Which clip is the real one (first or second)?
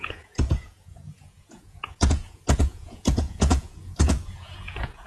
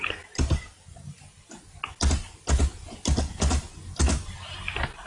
second